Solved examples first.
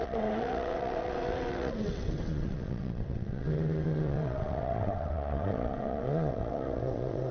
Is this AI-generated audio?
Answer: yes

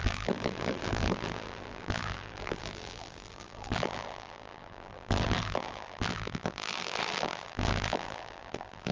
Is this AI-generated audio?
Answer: yes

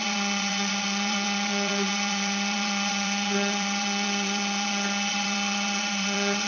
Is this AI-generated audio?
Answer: yes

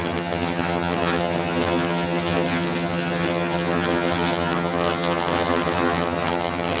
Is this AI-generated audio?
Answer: yes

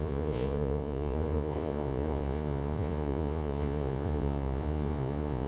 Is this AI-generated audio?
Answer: yes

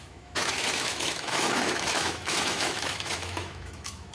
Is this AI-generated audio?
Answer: yes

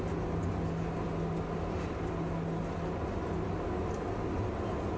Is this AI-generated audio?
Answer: no